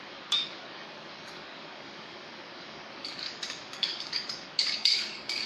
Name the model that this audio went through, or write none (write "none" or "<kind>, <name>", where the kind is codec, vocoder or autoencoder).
codec, DAC